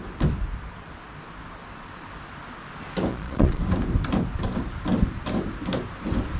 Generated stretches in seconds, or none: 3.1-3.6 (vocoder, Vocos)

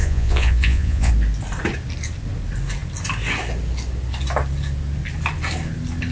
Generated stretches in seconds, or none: 0.0-1.1 (vocoder, Vocos)